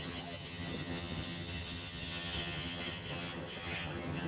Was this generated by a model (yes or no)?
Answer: yes